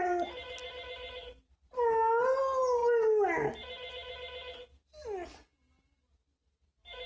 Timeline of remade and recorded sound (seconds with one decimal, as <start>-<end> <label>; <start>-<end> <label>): 0.0-7.1 recorded